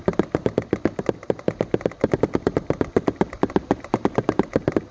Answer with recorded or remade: recorded